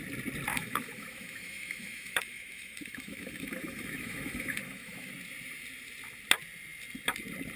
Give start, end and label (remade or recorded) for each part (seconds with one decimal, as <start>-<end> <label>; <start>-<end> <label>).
0.0-0.5 recorded; 0.5-5.1 remade; 5.1-7.6 recorded